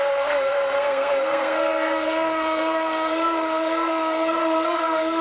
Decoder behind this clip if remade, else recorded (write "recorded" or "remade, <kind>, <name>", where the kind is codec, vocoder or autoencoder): remade, codec, SNAC